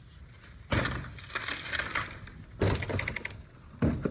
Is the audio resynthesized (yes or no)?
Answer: no